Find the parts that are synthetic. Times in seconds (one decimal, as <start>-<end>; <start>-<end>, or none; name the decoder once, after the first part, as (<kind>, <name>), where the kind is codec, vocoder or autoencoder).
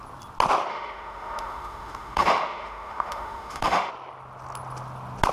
0.7-3.9 (autoencoder, DAC-VAE)